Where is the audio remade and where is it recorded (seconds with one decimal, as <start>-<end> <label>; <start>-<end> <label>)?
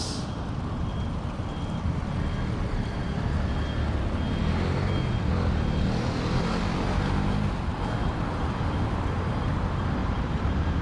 0.0-10.0 recorded; 10.0-10.8 remade